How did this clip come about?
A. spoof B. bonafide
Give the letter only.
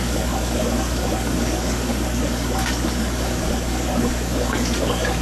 A